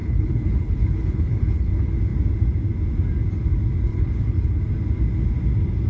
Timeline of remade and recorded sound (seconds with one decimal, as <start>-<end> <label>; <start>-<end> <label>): 0.0-1.7 remade; 1.7-3.9 recorded; 3.9-4.6 remade; 4.6-5.9 recorded